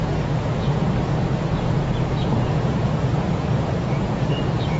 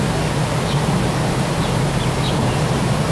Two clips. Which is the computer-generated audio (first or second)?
first